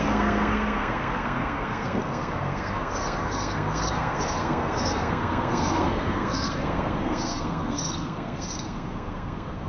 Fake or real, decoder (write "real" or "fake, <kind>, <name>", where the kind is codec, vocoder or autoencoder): fake, codec, SNAC